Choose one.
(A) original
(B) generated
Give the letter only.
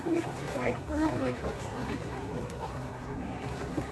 B